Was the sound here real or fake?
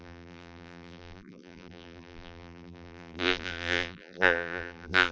fake